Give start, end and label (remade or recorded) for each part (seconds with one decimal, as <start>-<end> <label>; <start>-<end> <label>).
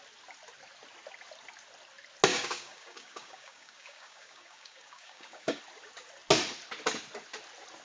0.0-2.3 recorded; 2.3-5.6 remade; 5.6-7.8 recorded